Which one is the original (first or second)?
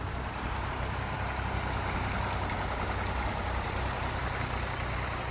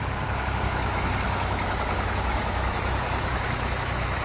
first